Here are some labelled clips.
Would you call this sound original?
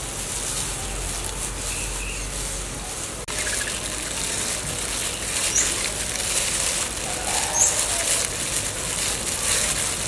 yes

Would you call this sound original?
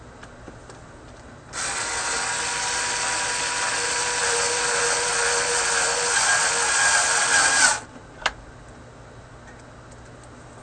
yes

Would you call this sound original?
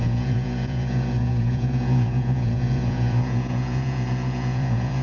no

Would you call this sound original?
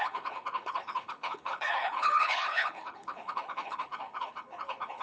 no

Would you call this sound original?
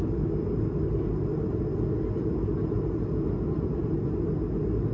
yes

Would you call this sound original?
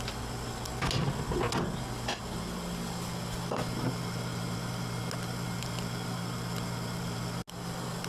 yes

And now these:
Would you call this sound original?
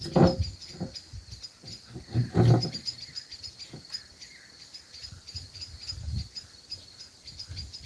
yes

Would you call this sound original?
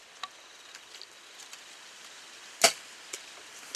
yes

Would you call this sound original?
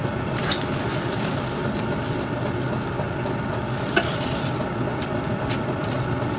yes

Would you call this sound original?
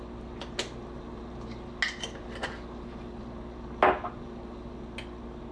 yes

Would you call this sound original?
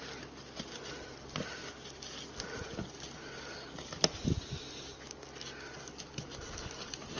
yes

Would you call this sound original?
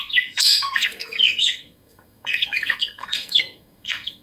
no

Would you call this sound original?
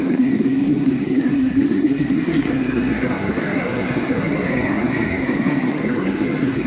no